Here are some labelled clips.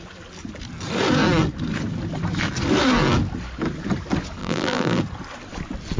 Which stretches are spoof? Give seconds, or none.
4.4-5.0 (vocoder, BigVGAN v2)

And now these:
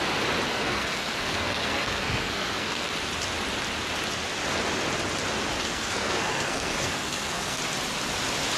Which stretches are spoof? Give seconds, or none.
0.5-2.9 (codec, SNAC); 5.6-7.6

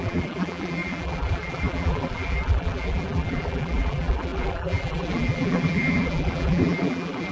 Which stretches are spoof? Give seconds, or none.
0.0-7.3 (vocoder, BigVGAN v2)